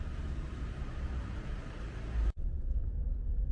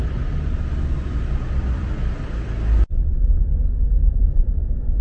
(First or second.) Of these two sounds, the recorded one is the second